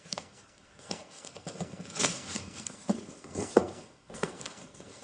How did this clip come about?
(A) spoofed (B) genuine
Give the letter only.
A